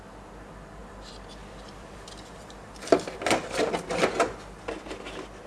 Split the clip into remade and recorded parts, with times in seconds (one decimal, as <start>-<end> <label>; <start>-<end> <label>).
0.0-0.8 recorded; 0.8-4.1 remade; 4.1-5.5 recorded